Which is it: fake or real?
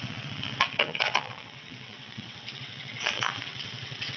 fake